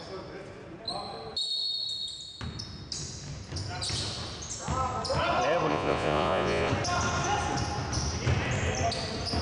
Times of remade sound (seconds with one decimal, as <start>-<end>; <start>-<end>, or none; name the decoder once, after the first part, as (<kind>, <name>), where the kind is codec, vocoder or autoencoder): 5.7-6.7 (vocoder, Vocos)